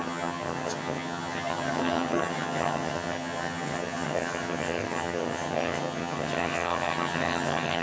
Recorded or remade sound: remade